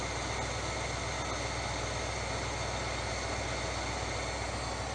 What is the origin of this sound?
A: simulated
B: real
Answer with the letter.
B